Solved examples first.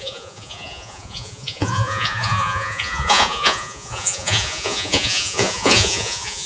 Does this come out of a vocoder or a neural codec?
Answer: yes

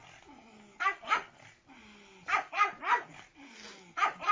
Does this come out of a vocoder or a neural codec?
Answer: no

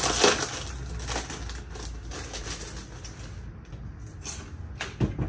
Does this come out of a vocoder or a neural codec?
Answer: no